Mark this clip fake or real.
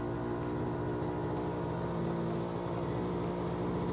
real